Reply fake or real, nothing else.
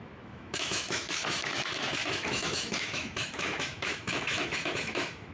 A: fake